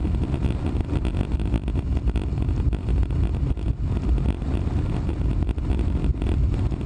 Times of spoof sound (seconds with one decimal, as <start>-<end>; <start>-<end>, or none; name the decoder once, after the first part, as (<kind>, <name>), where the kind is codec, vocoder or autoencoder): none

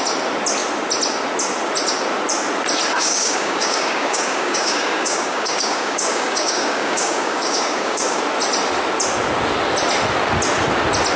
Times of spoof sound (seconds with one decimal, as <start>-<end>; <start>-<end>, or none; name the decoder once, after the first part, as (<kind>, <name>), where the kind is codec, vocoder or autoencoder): 3.0-8.2 (codec, DAC)

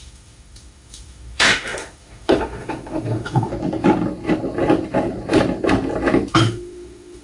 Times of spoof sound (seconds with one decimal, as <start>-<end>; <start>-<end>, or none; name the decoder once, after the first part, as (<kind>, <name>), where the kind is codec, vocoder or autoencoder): 0.0-3.5 (autoencoder, DAC-VAE); 6.3-7.2